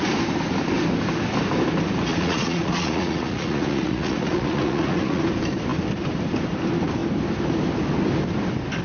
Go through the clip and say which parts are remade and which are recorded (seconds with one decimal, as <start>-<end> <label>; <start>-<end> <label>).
0.0-2.1 recorded; 2.1-5.2 remade; 5.2-8.8 recorded